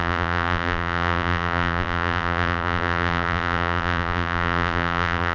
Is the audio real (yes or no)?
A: no